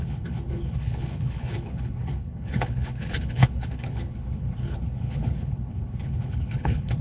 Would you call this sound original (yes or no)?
no